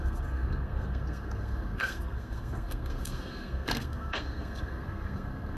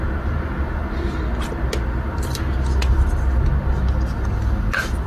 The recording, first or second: second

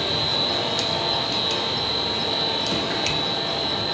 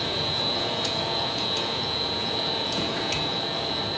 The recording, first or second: first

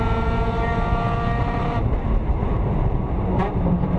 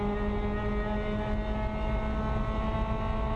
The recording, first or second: second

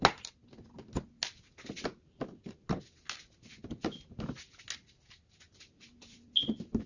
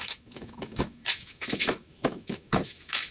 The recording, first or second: first